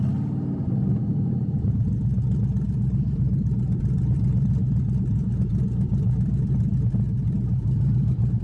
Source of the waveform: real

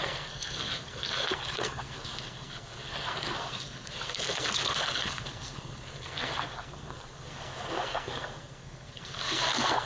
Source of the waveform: fake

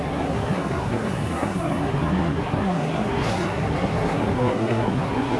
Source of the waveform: fake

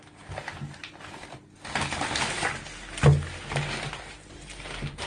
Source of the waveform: real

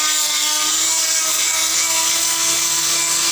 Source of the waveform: fake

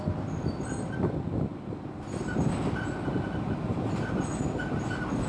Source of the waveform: real